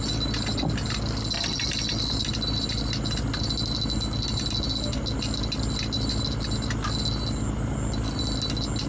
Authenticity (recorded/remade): recorded